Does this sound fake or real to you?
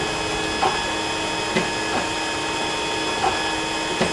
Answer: real